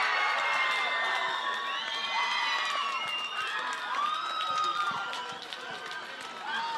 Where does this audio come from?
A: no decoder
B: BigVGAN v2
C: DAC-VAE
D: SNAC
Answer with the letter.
A